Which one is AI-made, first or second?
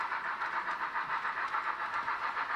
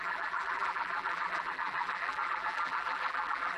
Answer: second